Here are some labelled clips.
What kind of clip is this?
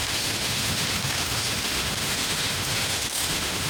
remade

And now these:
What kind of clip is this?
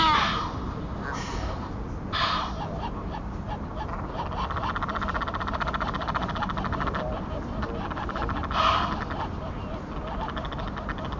recorded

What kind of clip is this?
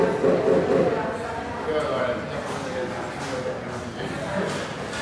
recorded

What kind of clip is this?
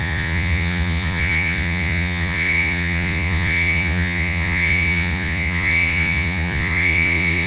remade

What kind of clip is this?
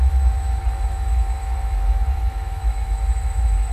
remade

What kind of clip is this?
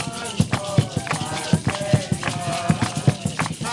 recorded